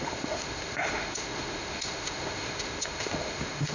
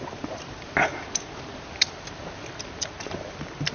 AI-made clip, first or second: first